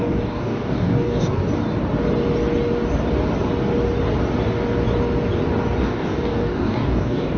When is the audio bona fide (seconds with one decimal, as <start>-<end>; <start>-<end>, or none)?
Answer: 1.4-5.8